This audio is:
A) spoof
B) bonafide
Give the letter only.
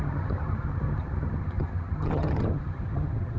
A